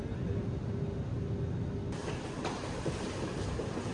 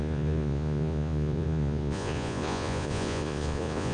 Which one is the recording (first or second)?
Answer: first